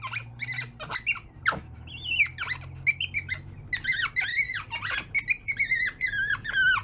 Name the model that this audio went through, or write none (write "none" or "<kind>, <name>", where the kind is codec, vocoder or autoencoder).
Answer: none